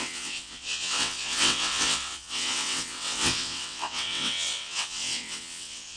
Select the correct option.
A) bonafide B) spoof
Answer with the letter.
B